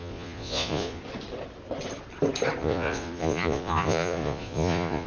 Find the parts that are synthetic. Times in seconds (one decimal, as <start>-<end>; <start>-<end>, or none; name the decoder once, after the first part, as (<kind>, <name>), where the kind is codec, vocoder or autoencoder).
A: 0.0-1.0 (vocoder, Vocos); 2.6-5.1

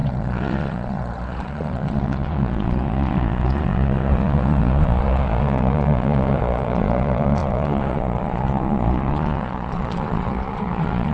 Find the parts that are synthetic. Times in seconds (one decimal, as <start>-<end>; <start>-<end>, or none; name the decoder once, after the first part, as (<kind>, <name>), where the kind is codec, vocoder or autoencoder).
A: 0.0-11.1 (vocoder, Vocos)

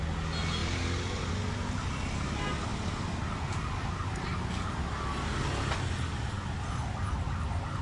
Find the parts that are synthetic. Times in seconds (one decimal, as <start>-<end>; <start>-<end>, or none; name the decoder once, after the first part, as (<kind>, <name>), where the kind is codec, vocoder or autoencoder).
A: none

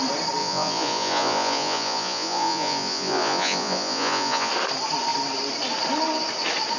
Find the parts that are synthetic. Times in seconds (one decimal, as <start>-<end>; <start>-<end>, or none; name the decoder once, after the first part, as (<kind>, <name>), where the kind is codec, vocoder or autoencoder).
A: 0.4-4.5 (vocoder, Vocos)

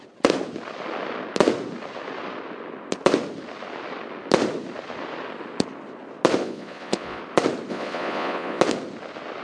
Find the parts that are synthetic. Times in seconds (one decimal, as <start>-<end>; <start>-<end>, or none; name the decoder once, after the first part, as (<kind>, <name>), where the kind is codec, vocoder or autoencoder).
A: 6.4-7.2 (vocoder, Vocos); 7.7-8.6

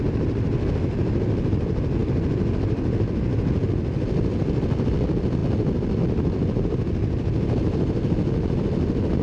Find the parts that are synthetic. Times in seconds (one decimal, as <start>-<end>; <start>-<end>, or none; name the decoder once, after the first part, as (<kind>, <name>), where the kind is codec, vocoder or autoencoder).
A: none